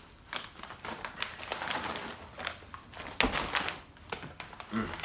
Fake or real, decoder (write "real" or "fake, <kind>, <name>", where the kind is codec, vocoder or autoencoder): real